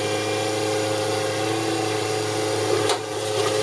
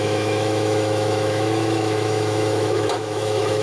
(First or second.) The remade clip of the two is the second